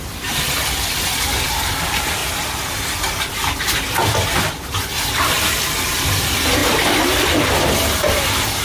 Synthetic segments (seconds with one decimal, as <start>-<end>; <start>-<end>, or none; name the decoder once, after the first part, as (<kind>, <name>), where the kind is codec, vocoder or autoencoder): 0.0-2.2 (vocoder, BigVGAN v2); 3.3-4.9; 5.5-6.6; 7.2-8.6